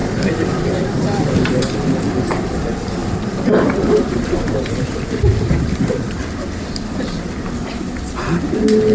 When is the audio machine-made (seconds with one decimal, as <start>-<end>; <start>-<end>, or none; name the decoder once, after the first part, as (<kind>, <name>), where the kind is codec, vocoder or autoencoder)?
0.0-1.9 (vocoder, BigVGAN v2); 3.0-7.9